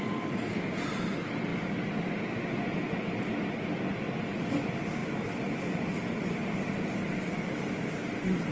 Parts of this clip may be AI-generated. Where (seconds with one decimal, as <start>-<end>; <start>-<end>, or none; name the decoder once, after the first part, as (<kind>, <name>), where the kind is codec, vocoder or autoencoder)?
none